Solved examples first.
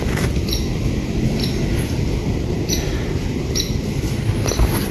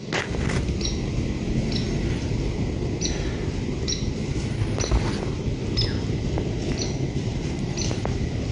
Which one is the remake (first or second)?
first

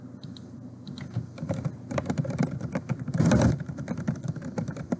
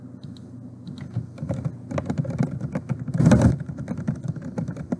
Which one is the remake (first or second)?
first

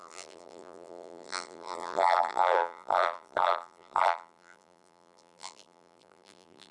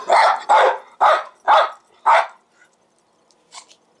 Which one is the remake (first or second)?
first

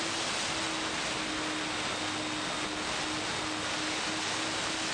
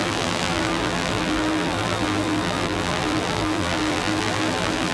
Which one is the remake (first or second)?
second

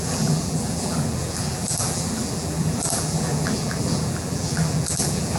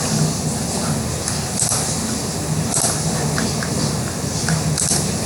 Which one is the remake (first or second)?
first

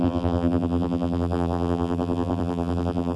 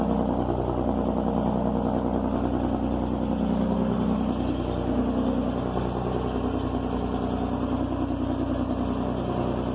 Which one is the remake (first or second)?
first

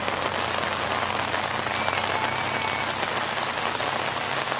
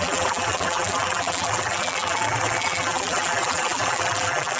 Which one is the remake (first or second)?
second